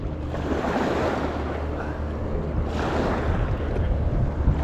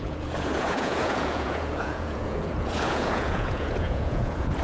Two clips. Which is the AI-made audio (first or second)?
second